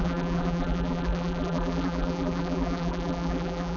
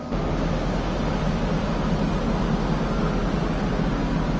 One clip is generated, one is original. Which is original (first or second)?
second